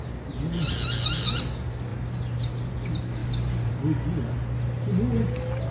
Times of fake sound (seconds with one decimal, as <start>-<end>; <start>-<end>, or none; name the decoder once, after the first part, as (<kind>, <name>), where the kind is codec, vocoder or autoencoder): 1.9-2.7 (vocoder, BigVGAN v2); 3.2-3.7